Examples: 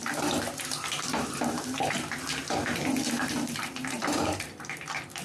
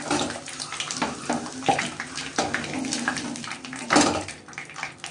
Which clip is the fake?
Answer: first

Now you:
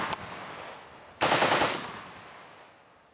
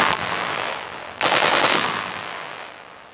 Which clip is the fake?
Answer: second